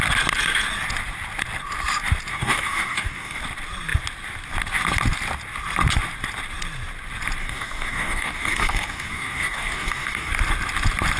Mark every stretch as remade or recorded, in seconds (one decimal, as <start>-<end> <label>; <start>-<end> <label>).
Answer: 0.0-2.3 recorded; 2.3-3.4 remade; 3.4-7.4 recorded; 7.4-10.3 remade; 10.3-11.2 recorded